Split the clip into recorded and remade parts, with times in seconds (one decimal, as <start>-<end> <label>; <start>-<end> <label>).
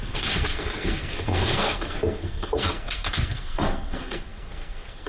0.0-5.1 remade